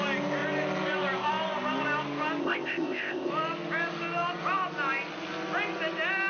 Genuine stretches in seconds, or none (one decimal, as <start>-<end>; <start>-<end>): 0.0-2.4; 3.3-6.3